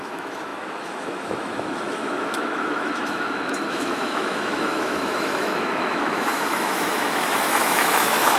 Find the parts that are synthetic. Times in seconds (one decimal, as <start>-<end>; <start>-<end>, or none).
0.0-8.4